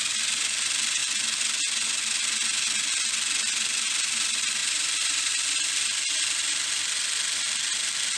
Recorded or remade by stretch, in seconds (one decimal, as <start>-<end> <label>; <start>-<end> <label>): 0.0-4.6 recorded; 4.6-6.4 remade; 6.4-8.2 recorded